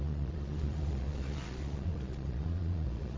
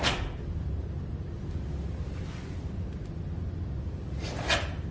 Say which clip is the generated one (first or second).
first